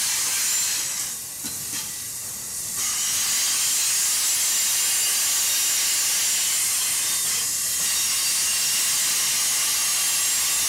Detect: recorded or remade recorded